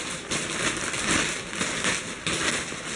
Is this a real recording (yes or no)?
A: yes